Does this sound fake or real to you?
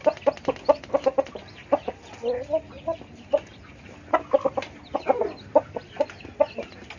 real